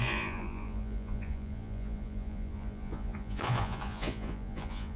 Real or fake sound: fake